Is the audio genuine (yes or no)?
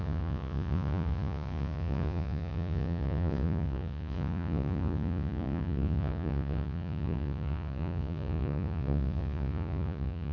no